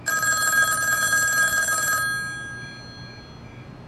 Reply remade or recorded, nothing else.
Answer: recorded